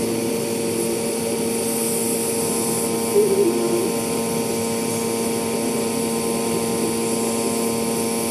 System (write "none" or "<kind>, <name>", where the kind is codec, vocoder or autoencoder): none